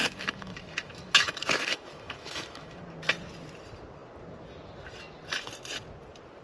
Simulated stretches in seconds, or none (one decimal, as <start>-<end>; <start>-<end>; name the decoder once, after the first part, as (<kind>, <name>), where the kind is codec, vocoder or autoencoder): 0.0-2.8 (autoencoder, DAC-VAE)